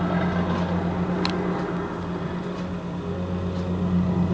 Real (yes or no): yes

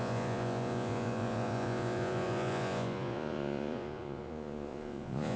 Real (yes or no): no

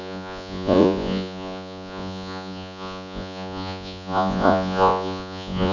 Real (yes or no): no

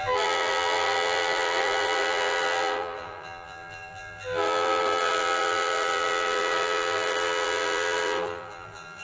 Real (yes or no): no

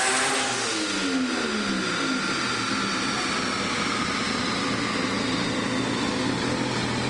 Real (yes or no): yes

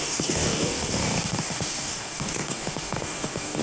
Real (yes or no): no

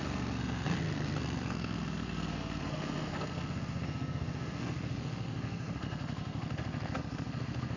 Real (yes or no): no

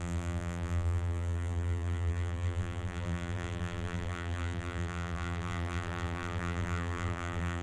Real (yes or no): no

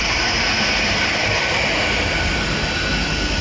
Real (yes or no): yes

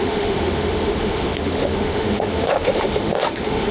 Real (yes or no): no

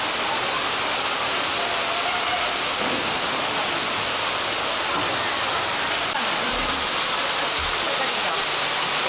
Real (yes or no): yes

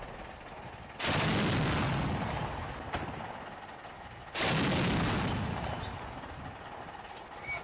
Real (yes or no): yes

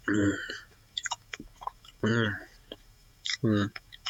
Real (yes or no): no